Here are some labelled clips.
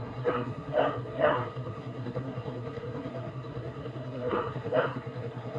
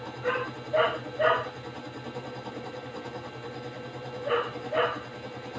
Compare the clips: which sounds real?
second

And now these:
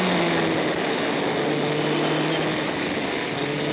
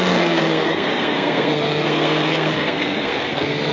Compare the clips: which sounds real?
first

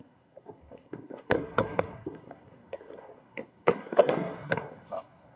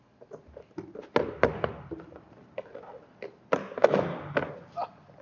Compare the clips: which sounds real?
second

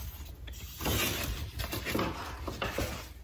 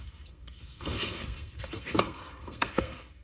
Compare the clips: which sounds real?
first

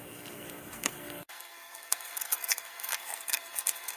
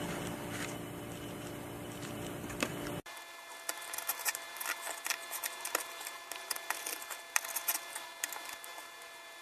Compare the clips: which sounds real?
second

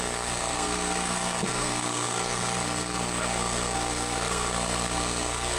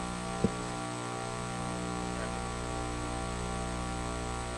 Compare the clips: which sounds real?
second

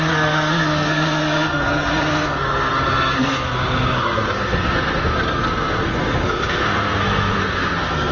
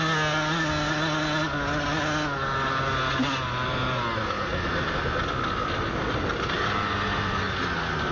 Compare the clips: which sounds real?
second